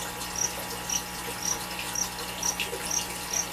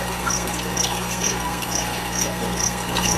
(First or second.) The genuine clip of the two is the first